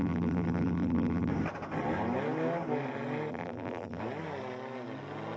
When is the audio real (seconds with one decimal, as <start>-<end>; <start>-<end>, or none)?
1.3-3.3; 4.0-5.4